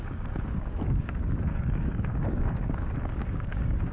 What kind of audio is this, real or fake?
fake